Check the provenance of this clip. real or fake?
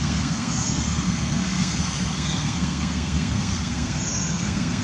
fake